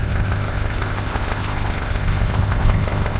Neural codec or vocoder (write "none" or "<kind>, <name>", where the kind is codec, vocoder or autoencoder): codec, ZipCodec